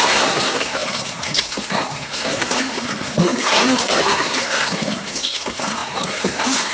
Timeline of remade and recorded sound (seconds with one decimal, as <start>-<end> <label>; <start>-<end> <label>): 0.0-6.7 remade